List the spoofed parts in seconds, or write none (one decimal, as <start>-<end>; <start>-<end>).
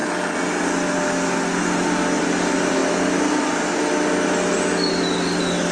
none